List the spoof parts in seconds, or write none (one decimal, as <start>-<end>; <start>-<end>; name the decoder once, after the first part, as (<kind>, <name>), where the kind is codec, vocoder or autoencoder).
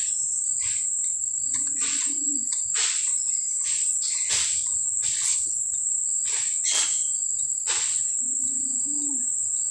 1.1-4.3 (vocoder, Vocos); 5.3-5.8; 7.2-8.0